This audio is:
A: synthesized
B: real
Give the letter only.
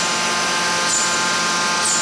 B